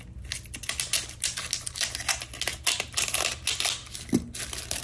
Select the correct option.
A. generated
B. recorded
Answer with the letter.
B